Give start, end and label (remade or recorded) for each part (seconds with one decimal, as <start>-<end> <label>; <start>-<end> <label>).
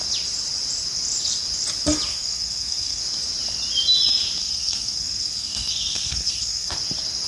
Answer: 0.0-2.1 recorded; 2.1-3.0 remade; 3.0-4.4 recorded; 4.4-6.7 remade; 6.7-7.3 recorded